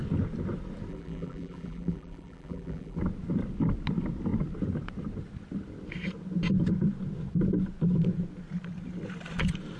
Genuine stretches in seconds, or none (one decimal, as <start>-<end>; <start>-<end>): 0.0-0.9; 3.0-9.8